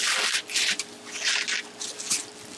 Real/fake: real